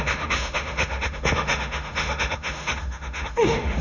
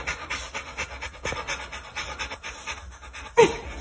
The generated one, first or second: first